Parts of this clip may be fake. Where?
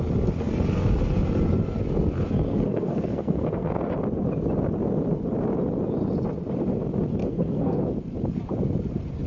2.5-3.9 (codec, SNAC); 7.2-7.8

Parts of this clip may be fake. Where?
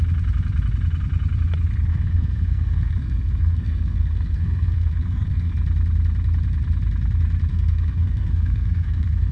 1.9-5.5 (codec, SNAC); 7.5-9.3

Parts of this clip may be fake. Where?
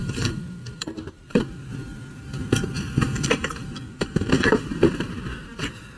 0.0-1.7 (vocoder, BigVGAN v2); 3.3-6.0